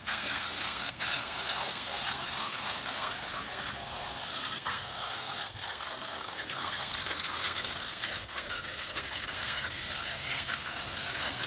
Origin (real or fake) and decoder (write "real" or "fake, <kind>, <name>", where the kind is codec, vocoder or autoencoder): fake, codec, SNAC